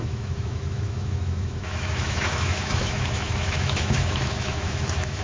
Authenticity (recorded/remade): remade